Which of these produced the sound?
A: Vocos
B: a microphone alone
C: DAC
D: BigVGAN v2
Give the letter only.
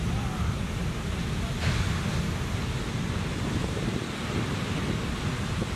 B